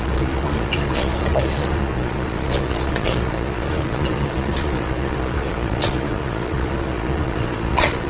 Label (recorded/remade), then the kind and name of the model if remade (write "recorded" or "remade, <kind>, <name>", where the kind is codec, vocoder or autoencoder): remade, vocoder, Vocos